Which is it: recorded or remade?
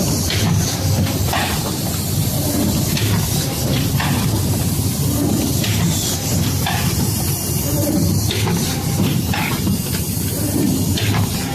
recorded